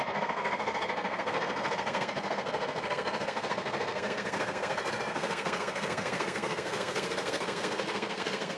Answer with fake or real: fake